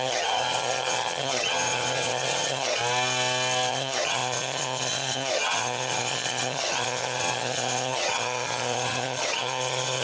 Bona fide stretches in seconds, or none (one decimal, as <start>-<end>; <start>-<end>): 2.8-3.7